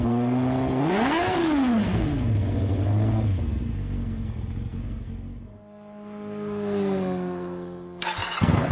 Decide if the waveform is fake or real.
fake